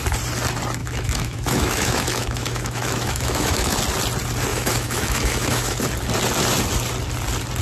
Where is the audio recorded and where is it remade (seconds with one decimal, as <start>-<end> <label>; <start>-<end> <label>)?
0.0-0.8 recorded; 0.8-3.8 remade; 3.8-4.5 recorded; 4.5-5.8 remade; 5.8-7.6 recorded